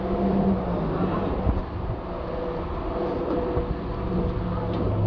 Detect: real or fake real